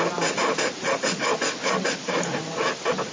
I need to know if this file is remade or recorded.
recorded